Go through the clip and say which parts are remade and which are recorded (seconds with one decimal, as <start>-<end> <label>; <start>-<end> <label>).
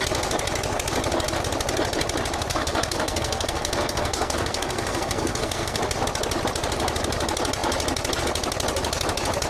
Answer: 0.0-2.5 recorded; 2.5-5.8 remade; 5.8-9.5 recorded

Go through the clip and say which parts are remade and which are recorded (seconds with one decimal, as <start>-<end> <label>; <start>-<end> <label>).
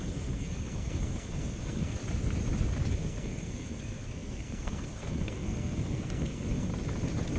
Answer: 0.0-2.0 remade; 2.0-2.9 recorded; 2.9-6.7 remade; 6.7-7.4 recorded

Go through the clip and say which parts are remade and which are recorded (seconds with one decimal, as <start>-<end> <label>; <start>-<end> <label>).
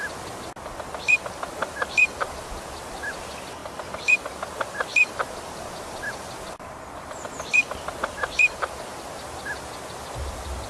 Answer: 0.0-10.7 recorded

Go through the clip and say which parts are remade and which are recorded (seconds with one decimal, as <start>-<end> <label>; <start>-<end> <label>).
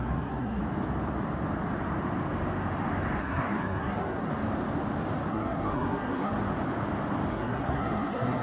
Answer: 0.0-0.6 remade; 0.6-3.2 recorded; 3.2-4.3 remade; 4.3-5.3 recorded; 5.3-6.3 remade; 6.3-7.3 recorded; 7.3-8.4 remade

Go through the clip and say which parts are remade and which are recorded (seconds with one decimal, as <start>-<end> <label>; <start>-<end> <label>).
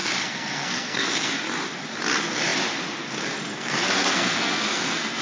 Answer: 0.0-1.3 remade; 1.3-3.5 recorded; 3.5-5.2 remade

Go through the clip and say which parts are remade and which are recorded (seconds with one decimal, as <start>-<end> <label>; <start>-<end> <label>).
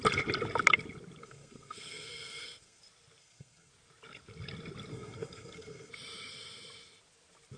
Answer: 0.0-1.2 recorded; 1.2-2.8 remade; 2.8-3.2 recorded; 3.2-3.7 remade; 3.7-4.9 recorded; 4.9-5.9 remade; 5.9-7.6 recorded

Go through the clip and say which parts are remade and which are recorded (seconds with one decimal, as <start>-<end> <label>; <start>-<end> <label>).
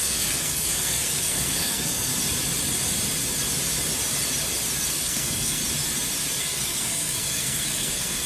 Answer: 0.0-2.1 remade; 2.1-4.9 recorded; 4.9-5.6 remade; 5.6-6.4 recorded; 6.4-8.3 remade